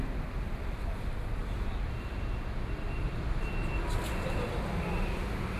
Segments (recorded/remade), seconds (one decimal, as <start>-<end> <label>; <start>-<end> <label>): 0.0-5.6 recorded